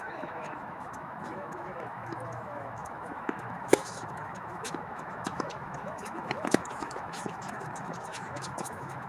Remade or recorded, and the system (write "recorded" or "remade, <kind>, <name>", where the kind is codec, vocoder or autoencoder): remade, autoencoder, DAC-VAE